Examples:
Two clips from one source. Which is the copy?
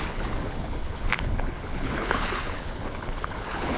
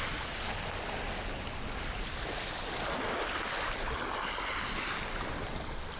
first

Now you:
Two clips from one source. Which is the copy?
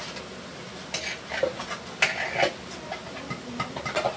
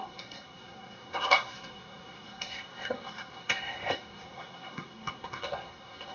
second